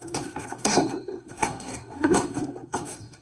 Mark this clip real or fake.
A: fake